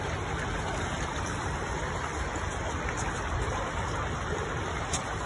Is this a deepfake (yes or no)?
no